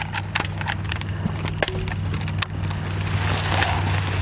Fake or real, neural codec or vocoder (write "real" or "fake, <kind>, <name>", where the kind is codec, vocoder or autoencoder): real